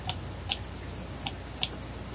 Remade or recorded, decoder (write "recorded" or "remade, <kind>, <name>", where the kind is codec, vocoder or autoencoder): recorded